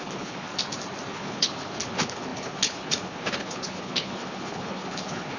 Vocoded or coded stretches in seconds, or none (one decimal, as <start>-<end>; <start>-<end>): 0.0-0.5; 1.1-5.4